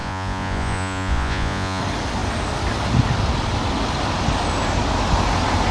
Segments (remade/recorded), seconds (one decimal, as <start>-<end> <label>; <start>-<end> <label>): 0.0-1.8 remade; 1.8-5.7 recorded